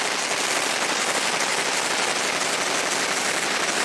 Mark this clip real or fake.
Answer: real